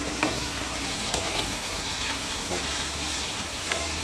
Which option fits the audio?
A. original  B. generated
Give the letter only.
B